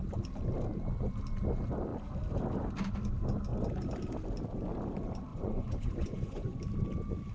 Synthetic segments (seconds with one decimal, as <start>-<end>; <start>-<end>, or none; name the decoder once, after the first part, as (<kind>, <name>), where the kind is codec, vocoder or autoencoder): 5.3-6.6 (vocoder, Vocos)